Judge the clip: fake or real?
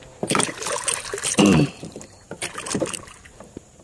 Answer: fake